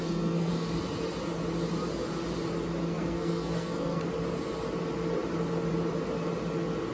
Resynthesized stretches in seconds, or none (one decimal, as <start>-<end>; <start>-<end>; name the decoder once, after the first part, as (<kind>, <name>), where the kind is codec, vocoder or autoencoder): 0.0-0.5 (codec, SNAC); 2.8-4.0